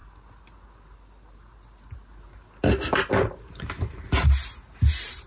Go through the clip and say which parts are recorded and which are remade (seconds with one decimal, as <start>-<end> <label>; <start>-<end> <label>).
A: 0.0-3.2 recorded; 3.2-5.3 remade